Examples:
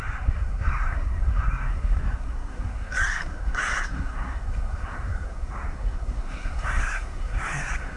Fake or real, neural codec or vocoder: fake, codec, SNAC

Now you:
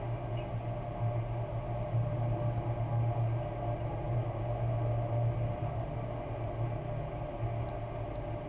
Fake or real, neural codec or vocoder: real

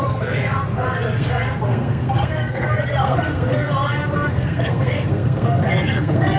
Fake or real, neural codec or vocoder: fake, codec, SNAC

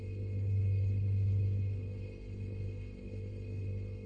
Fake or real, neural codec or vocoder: fake, codec, HILCodec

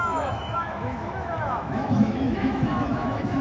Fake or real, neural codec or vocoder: fake, autoencoder, DAC-VAE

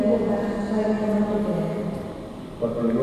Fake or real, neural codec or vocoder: real